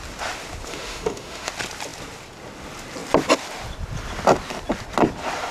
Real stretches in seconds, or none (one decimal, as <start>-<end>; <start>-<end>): 0.0-0.7; 1.5-5.5